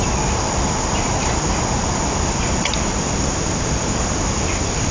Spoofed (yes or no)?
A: no